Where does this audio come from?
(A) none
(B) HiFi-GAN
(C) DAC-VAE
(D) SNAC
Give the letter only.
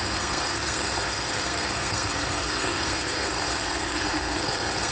D